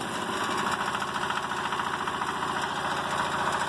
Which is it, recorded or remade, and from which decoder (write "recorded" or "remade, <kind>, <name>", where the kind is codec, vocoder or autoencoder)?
recorded